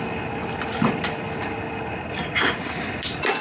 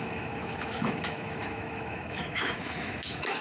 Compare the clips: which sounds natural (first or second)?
first